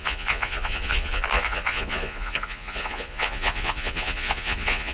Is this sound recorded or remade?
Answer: remade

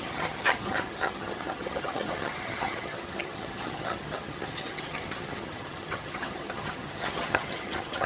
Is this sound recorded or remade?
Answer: remade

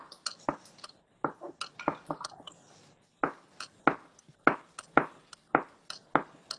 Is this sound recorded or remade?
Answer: recorded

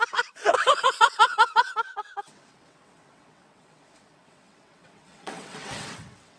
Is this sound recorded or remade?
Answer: remade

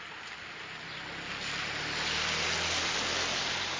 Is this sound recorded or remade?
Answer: recorded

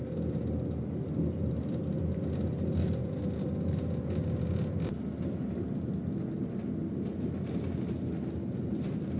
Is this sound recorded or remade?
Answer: recorded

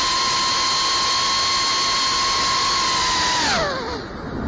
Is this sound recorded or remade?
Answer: recorded